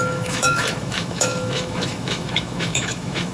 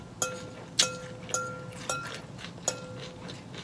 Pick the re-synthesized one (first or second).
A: first